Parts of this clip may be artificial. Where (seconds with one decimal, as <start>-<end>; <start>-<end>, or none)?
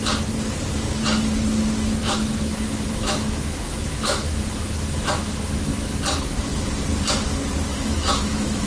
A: 2.0-6.0; 7.7-8.7